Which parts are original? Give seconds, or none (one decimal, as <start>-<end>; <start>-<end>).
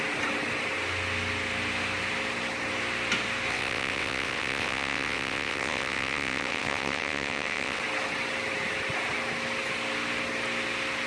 0.0-3.5; 7.8-11.1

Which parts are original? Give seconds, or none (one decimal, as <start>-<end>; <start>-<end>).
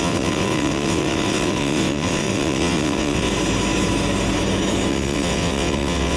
3.3-4.9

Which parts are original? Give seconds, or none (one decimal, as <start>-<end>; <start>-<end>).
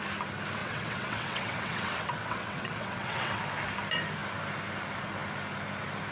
0.0-0.6; 3.4-6.1